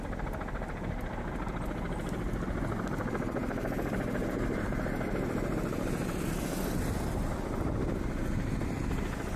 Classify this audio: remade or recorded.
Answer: recorded